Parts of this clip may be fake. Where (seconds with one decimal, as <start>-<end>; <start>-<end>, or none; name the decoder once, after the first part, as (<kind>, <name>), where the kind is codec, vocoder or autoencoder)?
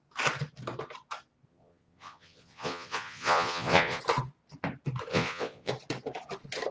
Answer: 1.5-4.0 (vocoder, Vocos); 5.1-5.7